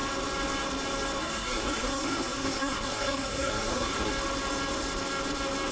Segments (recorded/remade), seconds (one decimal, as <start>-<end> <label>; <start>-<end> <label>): 0.0-1.2 recorded; 1.2-4.1 remade; 4.1-5.7 recorded